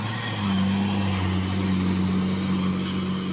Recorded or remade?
recorded